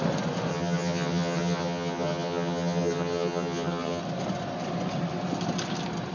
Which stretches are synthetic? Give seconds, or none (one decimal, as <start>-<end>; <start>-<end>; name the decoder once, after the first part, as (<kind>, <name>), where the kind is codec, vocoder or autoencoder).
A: 0.5-4.0 (vocoder, HiFi-GAN)